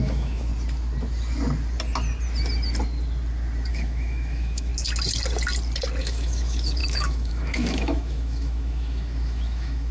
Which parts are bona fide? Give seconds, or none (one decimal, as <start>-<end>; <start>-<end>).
0.5-3.7; 4.7-6.0